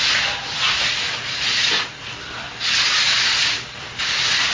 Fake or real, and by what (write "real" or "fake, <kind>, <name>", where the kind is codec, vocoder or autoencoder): real